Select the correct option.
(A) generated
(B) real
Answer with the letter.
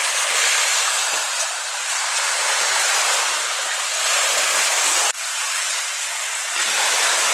A